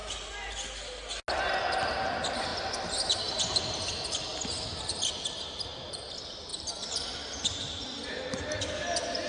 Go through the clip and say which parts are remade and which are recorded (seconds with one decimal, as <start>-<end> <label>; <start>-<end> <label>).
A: 0.0-9.3 recorded